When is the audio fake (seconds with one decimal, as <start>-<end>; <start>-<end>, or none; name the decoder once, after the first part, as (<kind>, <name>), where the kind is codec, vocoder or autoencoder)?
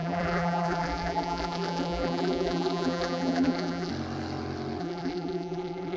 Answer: 0.0-3.9 (vocoder, BigVGAN v2); 4.8-6.0